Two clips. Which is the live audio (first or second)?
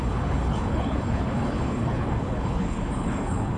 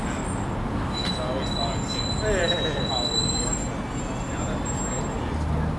second